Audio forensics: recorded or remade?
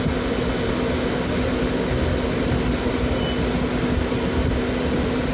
recorded